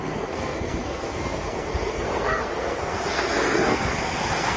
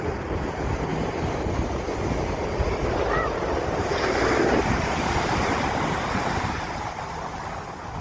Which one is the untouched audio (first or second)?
second